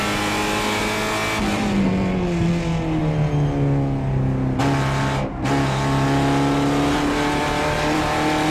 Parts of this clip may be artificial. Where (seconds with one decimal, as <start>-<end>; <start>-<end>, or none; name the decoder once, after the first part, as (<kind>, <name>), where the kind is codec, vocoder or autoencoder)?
none